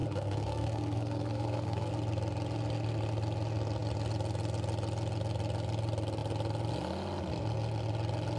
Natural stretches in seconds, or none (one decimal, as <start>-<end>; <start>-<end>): 1.9-8.4